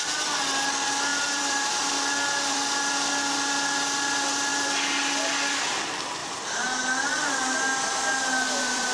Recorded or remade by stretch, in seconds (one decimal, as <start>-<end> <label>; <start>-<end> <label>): 0.0-1.1 recorded; 1.1-1.9 remade; 1.9-6.2 recorded; 6.2-6.8 remade; 6.8-8.3 recorded; 8.3-8.9 remade